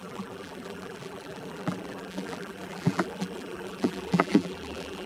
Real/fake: fake